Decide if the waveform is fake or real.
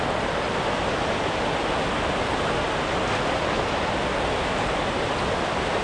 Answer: real